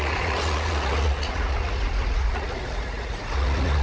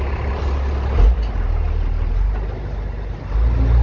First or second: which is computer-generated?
first